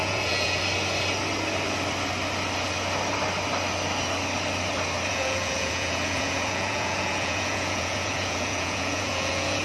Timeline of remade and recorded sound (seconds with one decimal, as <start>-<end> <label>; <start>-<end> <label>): 0.0-0.6 remade; 0.6-5.1 recorded; 5.1-9.6 remade

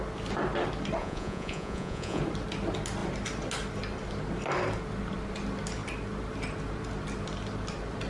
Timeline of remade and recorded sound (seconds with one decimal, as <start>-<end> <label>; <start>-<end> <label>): 0.0-1.0 recorded; 1.0-2.2 remade; 2.2-8.1 recorded